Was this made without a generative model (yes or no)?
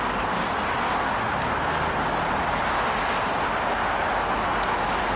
yes